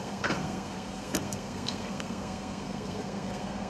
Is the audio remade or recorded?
remade